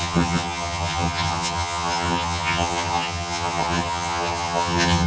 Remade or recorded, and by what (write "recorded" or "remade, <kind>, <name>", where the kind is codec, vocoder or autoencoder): remade, vocoder, HiFi-GAN